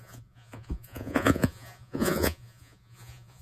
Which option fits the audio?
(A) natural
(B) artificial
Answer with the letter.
B